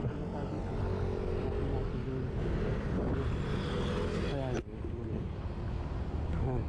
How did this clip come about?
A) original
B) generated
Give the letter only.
A